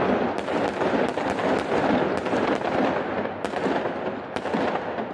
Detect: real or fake real